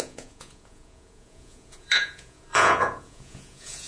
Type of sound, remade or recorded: remade